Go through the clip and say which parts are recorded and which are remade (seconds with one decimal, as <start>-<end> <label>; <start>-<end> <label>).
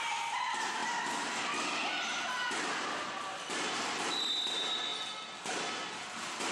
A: 0.0-6.5 recorded